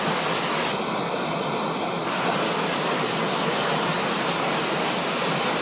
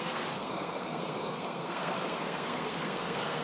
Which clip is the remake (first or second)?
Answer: second